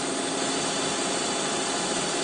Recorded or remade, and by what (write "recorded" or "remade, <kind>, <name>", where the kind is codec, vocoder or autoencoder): recorded